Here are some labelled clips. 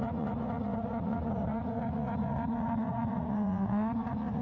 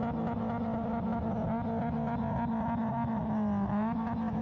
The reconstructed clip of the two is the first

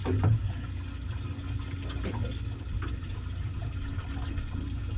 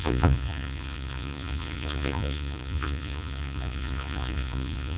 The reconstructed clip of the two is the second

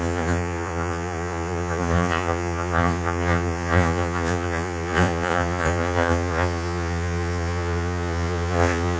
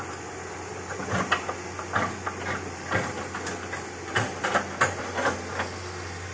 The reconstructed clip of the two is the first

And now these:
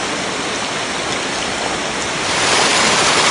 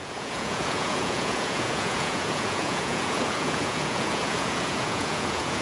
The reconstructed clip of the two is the second